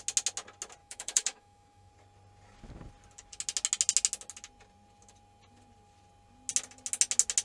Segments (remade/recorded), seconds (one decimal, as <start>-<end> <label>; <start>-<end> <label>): 0.0-0.8 recorded; 0.8-1.9 remade; 1.9-7.4 recorded